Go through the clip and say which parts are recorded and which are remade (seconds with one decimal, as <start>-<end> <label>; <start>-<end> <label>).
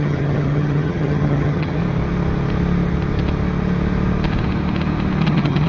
0.0-1.8 remade; 1.8-5.2 recorded; 5.2-5.7 remade